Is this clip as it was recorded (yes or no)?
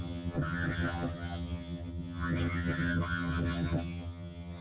no